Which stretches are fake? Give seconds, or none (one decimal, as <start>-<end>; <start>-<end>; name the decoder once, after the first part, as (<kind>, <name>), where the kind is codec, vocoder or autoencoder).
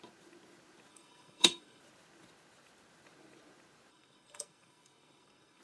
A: 0.9-1.8 (codec, SNAC); 3.9-5.6